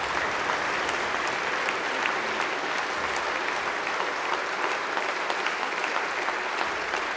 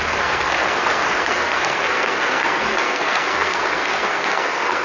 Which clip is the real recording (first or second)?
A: first